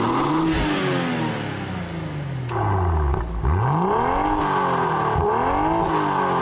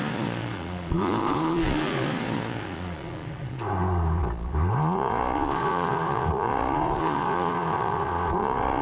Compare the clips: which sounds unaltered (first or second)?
first